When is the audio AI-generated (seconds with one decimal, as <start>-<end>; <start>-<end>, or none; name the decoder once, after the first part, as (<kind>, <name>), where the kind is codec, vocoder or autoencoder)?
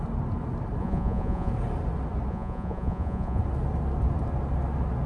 0.8-1.5 (vocoder, Vocos); 2.3-3.4